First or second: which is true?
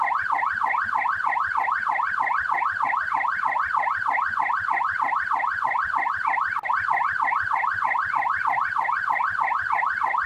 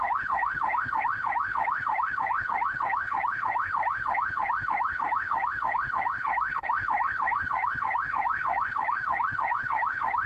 first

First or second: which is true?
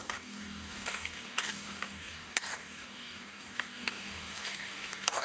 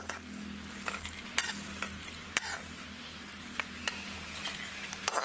second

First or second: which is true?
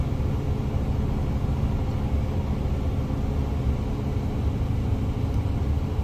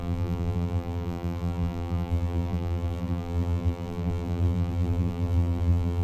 first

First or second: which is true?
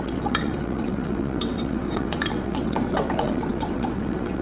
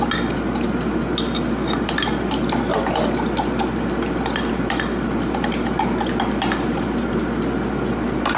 second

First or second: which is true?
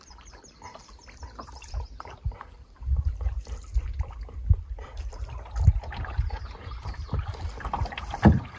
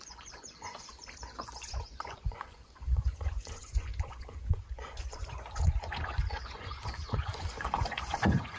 first